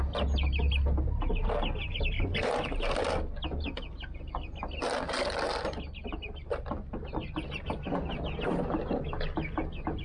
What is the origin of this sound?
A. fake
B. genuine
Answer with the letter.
B